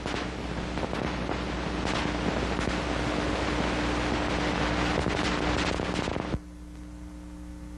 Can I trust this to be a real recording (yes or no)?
yes